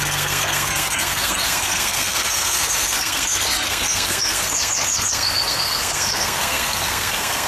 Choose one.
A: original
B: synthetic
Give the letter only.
B